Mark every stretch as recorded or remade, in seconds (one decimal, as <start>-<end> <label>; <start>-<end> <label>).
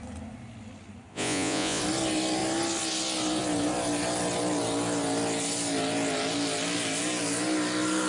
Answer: 0.0-1.1 recorded; 1.1-1.8 remade; 1.8-8.1 recorded